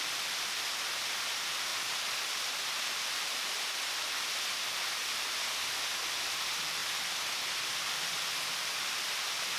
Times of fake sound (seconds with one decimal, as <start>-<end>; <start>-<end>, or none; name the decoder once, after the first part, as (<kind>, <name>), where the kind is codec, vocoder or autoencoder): 0.0-6.8 (vocoder, BigVGAN v2); 8.0-9.6